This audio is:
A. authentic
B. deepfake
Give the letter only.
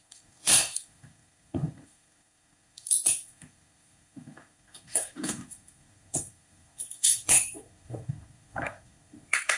B